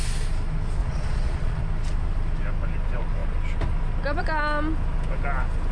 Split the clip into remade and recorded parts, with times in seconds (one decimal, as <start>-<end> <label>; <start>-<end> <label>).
0.0-0.8 recorded; 0.8-1.6 remade; 1.6-5.7 recorded

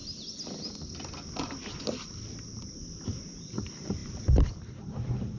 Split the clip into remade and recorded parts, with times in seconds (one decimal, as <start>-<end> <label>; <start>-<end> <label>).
0.0-4.0 recorded; 4.0-5.4 remade